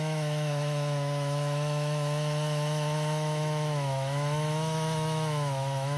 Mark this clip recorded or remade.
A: remade